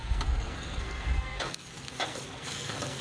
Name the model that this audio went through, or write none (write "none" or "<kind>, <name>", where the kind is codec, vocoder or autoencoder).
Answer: codec, SNAC